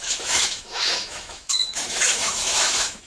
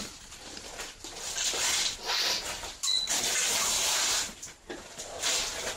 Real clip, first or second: second